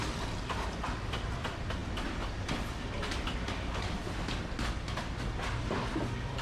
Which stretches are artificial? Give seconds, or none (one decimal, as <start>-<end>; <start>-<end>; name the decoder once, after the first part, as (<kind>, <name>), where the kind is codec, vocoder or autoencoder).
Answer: 0.0-1.8 (vocoder, BigVGAN v2); 2.4-4.0; 5.4-6.4